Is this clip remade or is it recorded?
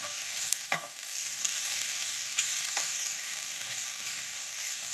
remade